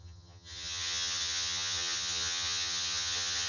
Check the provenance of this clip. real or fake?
fake